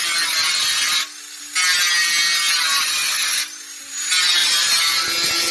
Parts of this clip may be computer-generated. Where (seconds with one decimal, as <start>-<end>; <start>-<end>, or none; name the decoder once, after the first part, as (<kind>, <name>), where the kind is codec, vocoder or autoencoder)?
4.4-5.0 (vocoder, BigVGAN v2)